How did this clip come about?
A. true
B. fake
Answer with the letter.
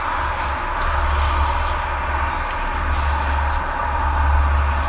A